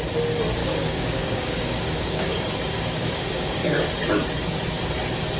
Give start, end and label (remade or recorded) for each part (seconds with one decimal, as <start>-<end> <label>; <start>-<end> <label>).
0.0-0.6 recorded; 0.6-3.8 remade; 3.8-5.4 recorded